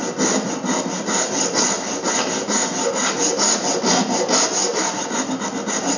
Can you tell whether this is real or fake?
real